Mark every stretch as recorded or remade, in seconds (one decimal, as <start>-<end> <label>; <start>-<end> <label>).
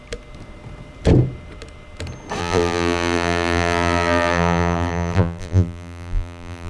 0.0-2.4 recorded; 2.4-6.7 remade